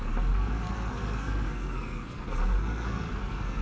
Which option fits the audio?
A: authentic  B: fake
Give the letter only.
B